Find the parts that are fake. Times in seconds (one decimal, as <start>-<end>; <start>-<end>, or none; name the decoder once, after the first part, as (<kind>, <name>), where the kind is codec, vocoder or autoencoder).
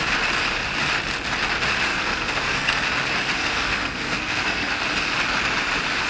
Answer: 1.9-2.8 (codec, SNAC); 3.3-4.8